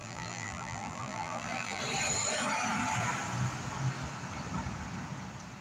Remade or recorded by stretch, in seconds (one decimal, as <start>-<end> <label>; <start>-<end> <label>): 0.0-1.8 remade; 1.8-5.6 recorded